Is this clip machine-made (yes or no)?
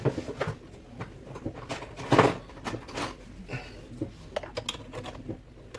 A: no